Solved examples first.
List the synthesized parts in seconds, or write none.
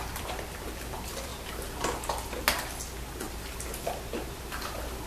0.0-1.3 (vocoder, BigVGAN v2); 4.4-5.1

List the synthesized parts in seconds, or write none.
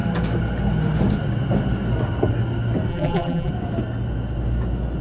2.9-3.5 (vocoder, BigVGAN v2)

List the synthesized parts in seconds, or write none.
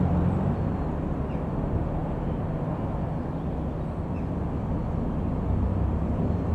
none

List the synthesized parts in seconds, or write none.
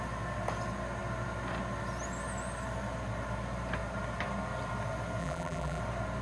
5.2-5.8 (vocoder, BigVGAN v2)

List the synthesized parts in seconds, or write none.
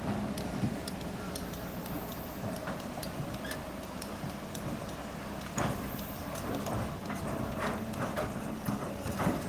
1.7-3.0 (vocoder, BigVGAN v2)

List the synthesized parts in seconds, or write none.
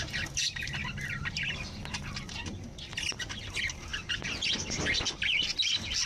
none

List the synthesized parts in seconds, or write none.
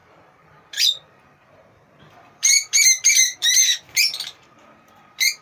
0.0-5.4 (vocoder, BigVGAN v2)